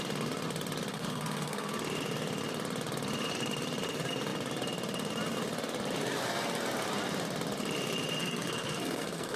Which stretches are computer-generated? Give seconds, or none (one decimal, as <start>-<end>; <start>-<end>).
0.9-1.7; 8.2-9.4